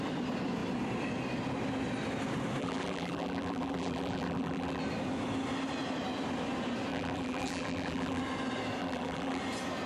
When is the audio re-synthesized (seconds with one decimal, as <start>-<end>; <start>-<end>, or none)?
2.6-4.8; 6.9-8.2; 8.8-9.4

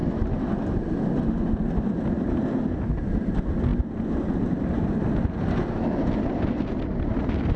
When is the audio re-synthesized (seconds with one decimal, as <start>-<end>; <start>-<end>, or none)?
none

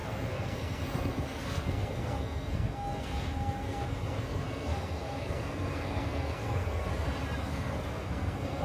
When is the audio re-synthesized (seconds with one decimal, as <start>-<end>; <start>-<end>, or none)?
0.0-6.9; 7.4-8.6

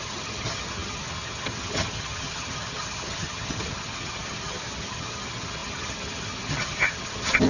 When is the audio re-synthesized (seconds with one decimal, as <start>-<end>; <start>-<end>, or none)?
0.0-7.5

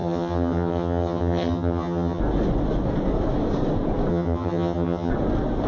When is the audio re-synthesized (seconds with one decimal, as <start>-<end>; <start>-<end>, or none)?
0.0-2.2; 4.1-5.1

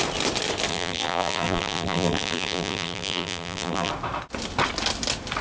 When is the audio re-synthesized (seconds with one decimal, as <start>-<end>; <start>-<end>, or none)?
0.7-3.9